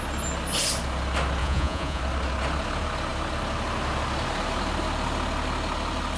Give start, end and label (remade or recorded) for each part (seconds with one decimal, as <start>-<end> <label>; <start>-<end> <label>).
0.0-1.4 recorded; 1.4-2.0 remade; 2.0-6.2 recorded